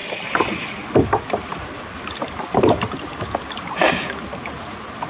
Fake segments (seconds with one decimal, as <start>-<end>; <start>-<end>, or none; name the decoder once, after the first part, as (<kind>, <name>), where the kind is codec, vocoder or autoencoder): none